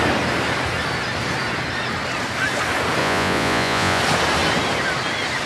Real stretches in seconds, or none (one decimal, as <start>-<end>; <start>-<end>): 0.0-3.0; 4.0-5.5